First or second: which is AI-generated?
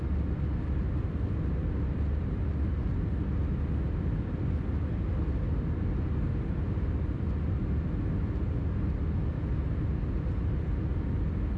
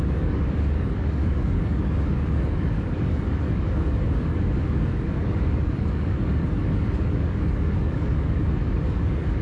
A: second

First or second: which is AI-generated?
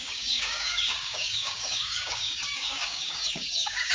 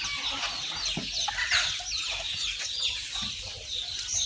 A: first